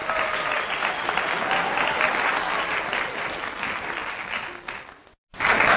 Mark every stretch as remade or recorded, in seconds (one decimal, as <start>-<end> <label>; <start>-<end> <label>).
0.0-5.8 recorded